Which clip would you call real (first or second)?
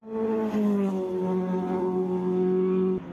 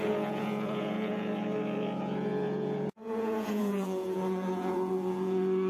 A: first